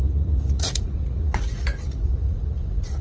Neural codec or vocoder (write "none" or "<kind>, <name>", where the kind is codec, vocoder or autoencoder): vocoder, Vocos